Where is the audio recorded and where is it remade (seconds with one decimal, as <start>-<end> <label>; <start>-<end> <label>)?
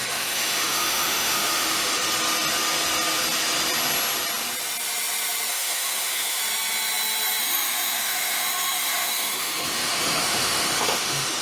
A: 0.0-2.0 remade; 2.0-5.5 recorded; 5.5-6.4 remade; 6.4-7.4 recorded; 7.4-11.4 remade